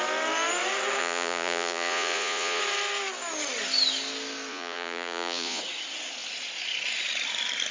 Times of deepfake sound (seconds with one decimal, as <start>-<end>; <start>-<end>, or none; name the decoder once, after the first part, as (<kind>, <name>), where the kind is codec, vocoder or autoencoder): 1.0-2.6 (vocoder, Vocos); 4.5-5.6